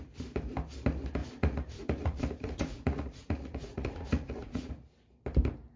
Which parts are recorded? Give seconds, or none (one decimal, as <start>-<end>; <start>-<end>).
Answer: 0.0-1.2; 4.7-5.8